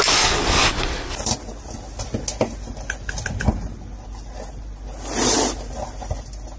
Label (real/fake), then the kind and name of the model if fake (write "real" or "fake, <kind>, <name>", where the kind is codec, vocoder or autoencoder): real